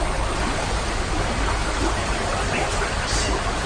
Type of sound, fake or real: real